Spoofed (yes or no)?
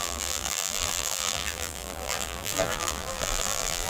yes